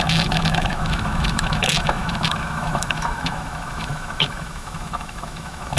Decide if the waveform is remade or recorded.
remade